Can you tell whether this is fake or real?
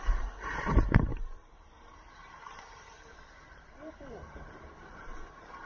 fake